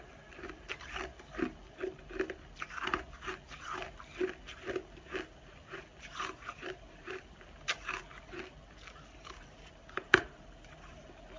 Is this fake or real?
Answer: real